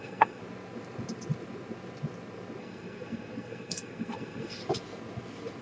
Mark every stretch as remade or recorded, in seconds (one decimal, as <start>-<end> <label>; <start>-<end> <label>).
0.0-0.4 remade; 0.4-2.6 recorded; 2.6-4.6 remade; 4.6-5.6 recorded